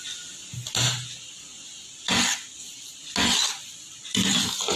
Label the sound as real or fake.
real